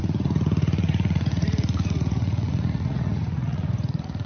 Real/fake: fake